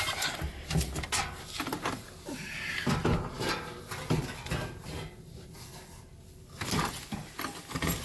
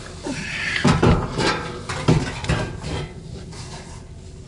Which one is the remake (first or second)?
second